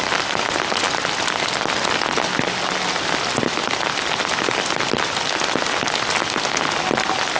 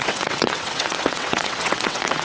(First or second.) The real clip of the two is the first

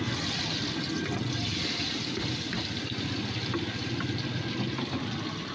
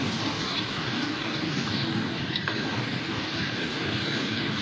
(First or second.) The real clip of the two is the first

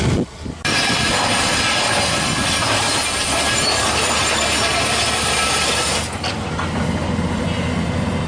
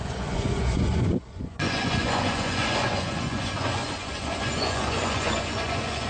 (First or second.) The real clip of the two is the first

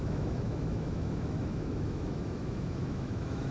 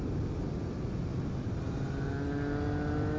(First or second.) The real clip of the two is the second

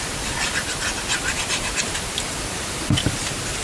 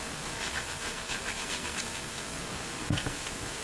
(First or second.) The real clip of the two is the first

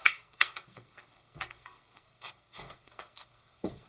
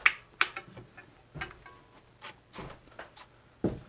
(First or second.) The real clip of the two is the second